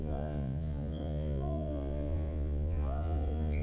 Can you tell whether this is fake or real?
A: fake